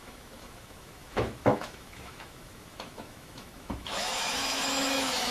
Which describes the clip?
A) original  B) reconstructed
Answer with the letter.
B